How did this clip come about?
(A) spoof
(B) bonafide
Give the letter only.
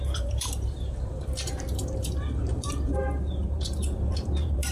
A